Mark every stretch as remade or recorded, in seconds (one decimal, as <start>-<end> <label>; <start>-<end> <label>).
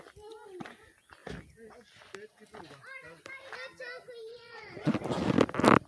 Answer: 0.0-4.3 recorded; 4.3-4.9 remade; 4.9-5.9 recorded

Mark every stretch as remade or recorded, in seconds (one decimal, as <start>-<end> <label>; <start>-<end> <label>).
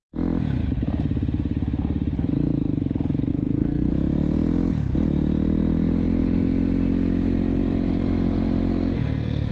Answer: 0.0-3.3 recorded; 3.3-3.9 remade; 3.9-8.7 recorded; 8.7-9.5 remade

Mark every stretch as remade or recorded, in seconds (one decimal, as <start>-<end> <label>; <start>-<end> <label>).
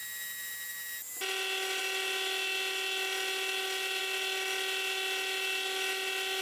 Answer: 0.0-6.4 recorded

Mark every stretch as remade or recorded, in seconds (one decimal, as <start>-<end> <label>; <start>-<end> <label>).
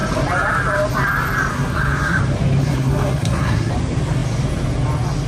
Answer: 0.0-1.5 recorded; 1.5-2.2 remade; 2.2-2.6 recorded; 2.6-3.7 remade; 3.7-5.3 recorded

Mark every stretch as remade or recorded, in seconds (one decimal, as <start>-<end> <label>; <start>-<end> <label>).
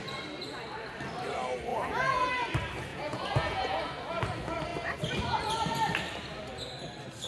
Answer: 0.0-1.7 recorded; 1.7-2.3 remade; 2.3-2.9 recorded; 2.9-3.8 remade; 3.8-7.3 recorded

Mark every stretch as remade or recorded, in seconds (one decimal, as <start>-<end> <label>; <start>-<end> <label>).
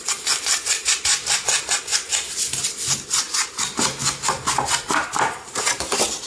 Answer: 0.0-6.3 recorded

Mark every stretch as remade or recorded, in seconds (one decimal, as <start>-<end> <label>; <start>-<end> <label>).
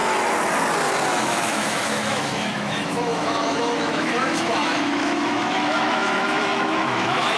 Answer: 0.0-1.1 recorded; 1.1-7.4 remade